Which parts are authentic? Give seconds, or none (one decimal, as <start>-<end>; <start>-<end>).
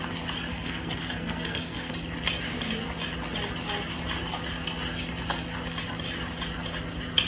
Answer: 0.0-0.5; 1.9-7.3